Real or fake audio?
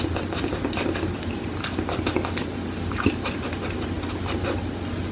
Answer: real